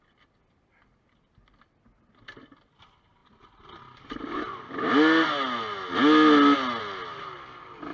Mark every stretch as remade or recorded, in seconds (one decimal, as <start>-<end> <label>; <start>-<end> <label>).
0.0-7.9 recorded